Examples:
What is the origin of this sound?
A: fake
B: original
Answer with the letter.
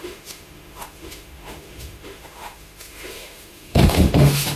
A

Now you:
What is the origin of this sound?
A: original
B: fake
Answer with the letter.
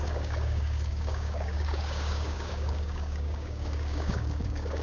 B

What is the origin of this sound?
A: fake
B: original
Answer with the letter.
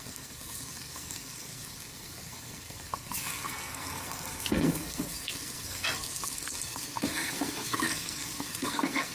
A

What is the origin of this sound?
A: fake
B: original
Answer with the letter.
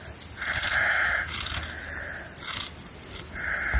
B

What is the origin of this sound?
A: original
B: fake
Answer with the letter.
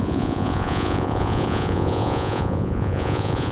B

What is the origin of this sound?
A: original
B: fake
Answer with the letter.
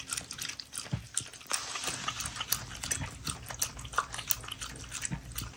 A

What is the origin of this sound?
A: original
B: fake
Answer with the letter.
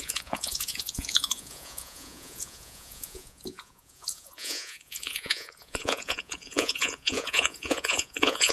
B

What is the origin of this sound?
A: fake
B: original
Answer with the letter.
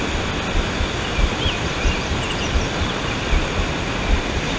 B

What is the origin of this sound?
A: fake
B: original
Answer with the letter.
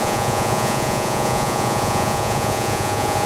A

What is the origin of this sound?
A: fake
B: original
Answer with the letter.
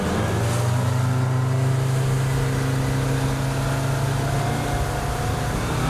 B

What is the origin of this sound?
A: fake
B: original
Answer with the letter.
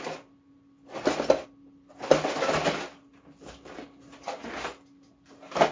B